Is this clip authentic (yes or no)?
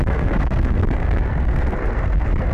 no